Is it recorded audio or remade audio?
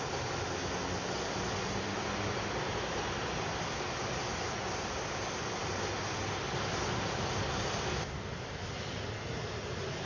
recorded